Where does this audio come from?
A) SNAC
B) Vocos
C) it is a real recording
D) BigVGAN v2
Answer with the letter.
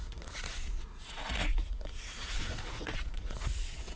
B